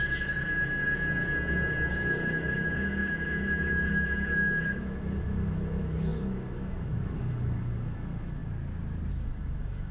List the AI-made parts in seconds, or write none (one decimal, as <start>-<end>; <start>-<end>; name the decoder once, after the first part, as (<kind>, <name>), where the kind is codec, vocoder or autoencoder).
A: 0.0-0.8 (autoencoder, DAC-VAE); 1.9-8.4; 9.1-9.9